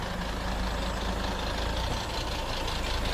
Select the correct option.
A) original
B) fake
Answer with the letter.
A